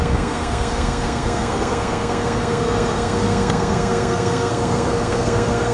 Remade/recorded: remade